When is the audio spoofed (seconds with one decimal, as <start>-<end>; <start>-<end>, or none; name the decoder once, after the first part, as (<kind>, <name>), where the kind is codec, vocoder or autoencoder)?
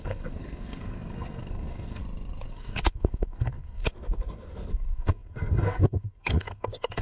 0.0-2.0 (codec, SNAC); 2.5-7.0